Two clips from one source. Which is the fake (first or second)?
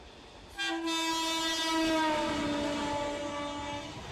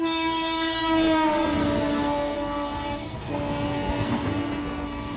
second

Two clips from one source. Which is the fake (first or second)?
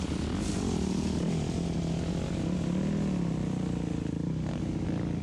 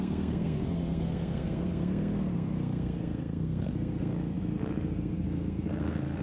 second